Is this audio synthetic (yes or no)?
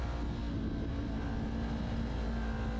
no